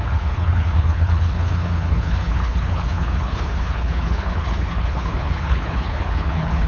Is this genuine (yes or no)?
no